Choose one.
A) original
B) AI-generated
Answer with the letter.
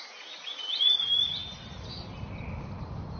A